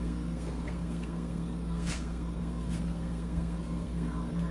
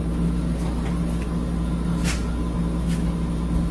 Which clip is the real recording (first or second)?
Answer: second